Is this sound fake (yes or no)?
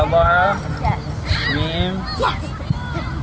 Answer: no